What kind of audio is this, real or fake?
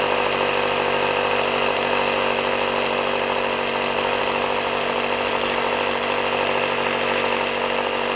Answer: real